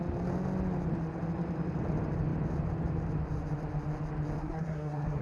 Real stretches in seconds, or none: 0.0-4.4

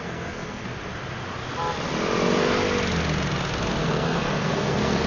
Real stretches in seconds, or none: 0.7-3.8

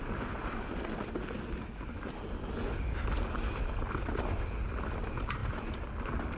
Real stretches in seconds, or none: 0.0-6.4

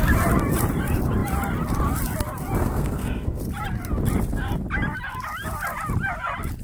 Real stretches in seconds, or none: 0.0-2.6; 3.4-6.6

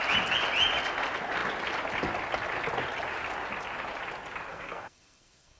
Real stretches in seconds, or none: 0.0-4.5

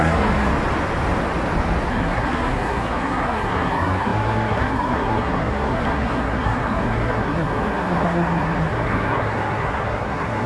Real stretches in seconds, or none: 0.5-1.9